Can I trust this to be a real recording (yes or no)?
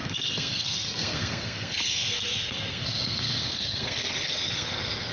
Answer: no